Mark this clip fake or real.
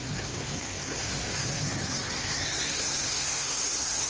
fake